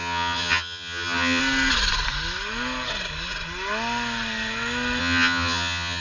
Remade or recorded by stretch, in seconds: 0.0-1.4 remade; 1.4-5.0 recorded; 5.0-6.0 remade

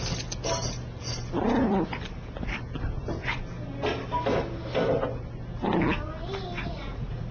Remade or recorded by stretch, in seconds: 0.0-6.7 recorded; 6.7-7.3 remade